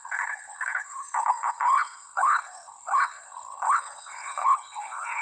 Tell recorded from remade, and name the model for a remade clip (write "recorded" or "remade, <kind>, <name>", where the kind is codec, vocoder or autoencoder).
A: remade, codec, HILCodec